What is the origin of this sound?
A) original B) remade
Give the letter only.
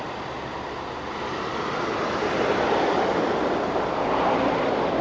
A